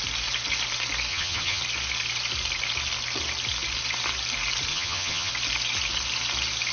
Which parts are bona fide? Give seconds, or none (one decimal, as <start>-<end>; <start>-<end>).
0.0-1.1; 1.6-4.7; 5.3-6.7